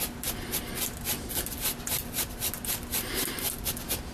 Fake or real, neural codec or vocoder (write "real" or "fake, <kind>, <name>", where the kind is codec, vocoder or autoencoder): real